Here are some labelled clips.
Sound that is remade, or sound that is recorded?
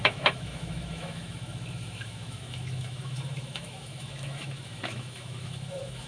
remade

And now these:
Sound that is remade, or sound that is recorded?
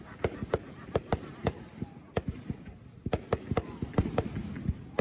recorded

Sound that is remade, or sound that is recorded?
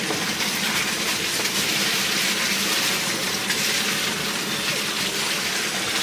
recorded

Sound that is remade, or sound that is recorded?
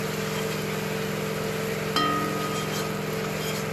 recorded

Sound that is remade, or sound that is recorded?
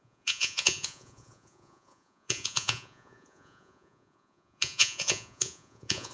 remade